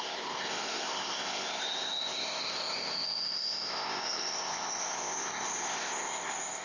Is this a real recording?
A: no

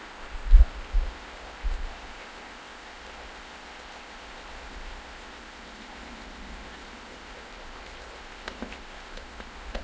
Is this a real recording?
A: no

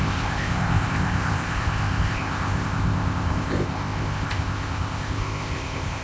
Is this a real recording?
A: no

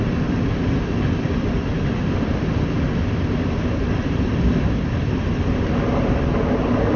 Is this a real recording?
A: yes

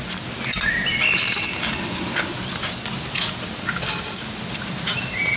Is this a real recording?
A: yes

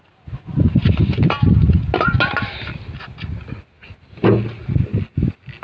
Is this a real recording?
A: yes